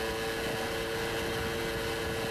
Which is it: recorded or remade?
recorded